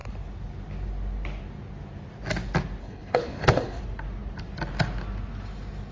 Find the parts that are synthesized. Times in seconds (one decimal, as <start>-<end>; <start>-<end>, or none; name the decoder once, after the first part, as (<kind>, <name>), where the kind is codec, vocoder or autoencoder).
2.8-3.8 (codec, HILCodec)